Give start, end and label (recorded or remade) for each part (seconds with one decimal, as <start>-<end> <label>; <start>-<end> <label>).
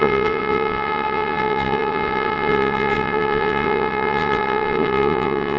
0.0-5.6 remade